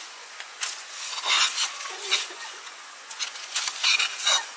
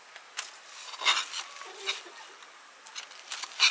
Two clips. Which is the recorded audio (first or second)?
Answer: second